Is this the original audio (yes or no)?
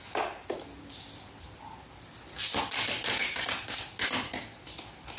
yes